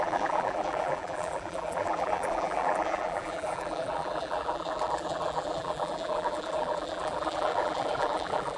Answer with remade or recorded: remade